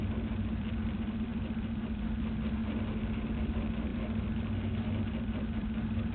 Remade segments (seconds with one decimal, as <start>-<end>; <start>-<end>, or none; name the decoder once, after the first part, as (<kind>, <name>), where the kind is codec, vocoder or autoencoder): 0.0-2.6 (vocoder, BigVGAN v2); 3.4-6.1

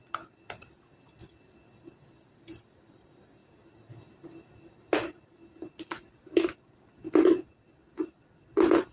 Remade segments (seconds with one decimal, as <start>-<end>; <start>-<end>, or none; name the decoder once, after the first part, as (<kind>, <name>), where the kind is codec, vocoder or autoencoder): none

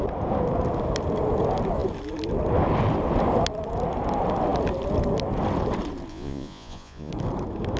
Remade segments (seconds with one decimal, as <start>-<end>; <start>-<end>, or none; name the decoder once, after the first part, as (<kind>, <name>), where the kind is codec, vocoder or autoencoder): 6.1-7.1 (vocoder, Vocos)

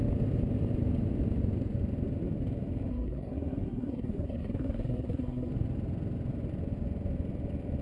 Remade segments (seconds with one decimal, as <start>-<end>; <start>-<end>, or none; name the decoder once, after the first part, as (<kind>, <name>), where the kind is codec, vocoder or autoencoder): 2.9-5.5 (codec, SNAC)

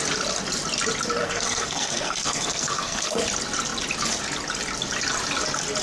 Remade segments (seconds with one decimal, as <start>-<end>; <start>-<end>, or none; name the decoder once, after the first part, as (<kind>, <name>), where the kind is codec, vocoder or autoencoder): 1.2-3.2 (codec, SNAC)

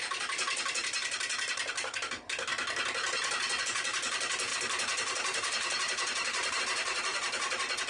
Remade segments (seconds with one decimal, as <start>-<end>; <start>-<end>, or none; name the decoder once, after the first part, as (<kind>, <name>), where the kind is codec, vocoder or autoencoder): 4.5-6.6 (vocoder, BigVGAN v2)

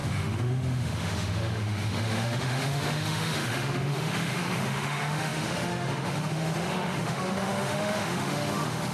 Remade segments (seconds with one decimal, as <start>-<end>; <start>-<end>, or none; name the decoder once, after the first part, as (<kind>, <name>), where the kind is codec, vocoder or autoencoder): 0.0-8.9 (autoencoder, DAC-VAE)